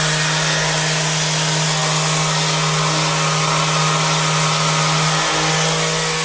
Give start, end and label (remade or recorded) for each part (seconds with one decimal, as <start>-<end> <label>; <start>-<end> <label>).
0.0-6.2 recorded

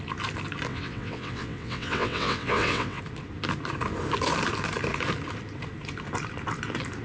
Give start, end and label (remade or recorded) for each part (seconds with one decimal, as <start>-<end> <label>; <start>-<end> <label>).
0.0-0.7 recorded; 0.7-3.0 remade; 3.0-7.0 recorded

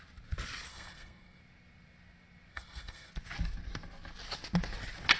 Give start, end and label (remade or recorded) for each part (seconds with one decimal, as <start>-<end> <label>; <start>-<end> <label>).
0.0-0.7 recorded; 0.7-1.4 remade; 1.4-2.5 recorded; 2.5-3.1 remade; 3.1-5.2 recorded

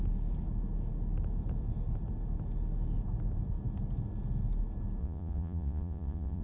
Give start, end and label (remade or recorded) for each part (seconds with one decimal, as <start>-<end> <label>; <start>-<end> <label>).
0.0-5.0 recorded; 5.0-6.4 remade

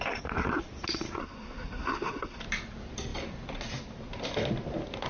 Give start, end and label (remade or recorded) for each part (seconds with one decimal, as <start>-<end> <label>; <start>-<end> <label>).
0.0-1.2 recorded; 1.2-2.4 remade; 2.4-5.1 recorded

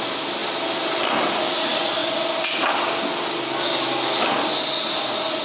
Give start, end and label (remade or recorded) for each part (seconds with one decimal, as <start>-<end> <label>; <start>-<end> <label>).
0.0-5.4 recorded

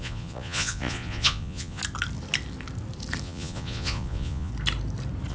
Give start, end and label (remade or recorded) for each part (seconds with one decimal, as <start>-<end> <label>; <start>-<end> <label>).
0.0-1.8 remade; 1.8-3.2 recorded; 3.2-4.5 remade; 4.5-5.3 recorded

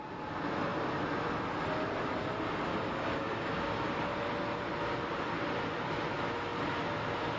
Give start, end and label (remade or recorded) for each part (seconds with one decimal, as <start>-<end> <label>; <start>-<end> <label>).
0.0-2.7 recorded; 2.7-3.9 remade; 3.9-7.4 recorded